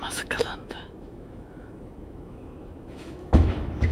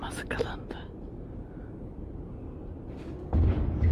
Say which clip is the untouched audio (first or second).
second